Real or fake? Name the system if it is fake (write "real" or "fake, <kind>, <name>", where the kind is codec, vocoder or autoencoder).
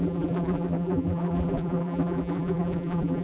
fake, vocoder, BigVGAN v2